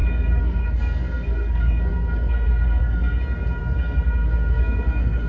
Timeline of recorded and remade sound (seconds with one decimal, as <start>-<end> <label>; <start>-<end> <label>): 0.0-3.2 remade; 3.2-3.6 recorded; 3.6-5.3 remade